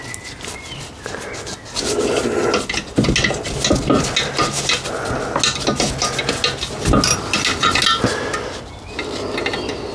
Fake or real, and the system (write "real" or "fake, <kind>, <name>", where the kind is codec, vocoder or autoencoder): real